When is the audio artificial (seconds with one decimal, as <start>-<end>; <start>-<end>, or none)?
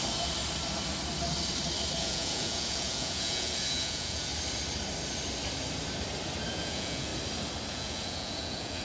2.0-4.3; 6.5-7.1; 7.7-8.8